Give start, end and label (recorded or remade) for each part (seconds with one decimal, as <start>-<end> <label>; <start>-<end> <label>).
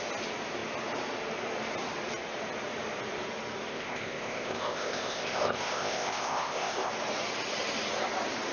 0.0-3.7 recorded; 3.7-6.9 remade; 6.9-8.5 recorded